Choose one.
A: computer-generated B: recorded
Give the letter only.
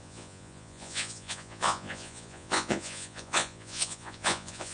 A